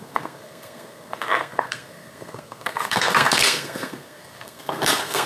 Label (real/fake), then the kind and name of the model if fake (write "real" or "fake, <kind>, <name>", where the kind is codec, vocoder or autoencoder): fake, codec, SNAC